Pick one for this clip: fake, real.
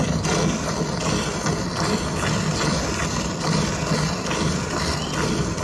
real